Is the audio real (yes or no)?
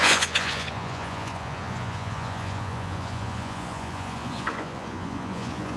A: no